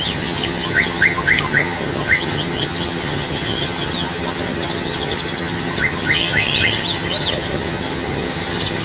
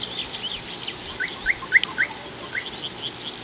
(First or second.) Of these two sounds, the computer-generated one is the first